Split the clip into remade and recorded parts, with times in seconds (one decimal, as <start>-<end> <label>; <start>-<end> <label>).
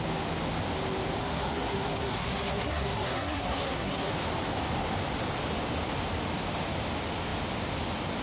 0.0-1.2 recorded; 1.2-4.1 remade; 4.1-8.2 recorded